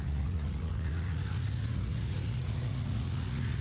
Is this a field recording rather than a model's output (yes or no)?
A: no